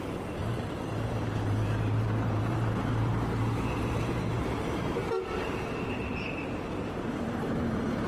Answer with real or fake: fake